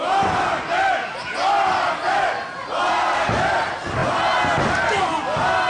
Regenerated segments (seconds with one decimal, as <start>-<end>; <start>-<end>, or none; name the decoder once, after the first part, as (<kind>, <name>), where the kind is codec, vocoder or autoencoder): none